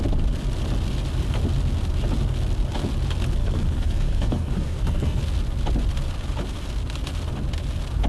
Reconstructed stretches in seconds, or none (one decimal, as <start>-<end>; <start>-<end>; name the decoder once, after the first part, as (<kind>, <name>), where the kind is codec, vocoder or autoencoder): 3.4-5.2 (codec, SNAC)